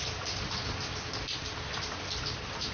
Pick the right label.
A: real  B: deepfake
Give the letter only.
A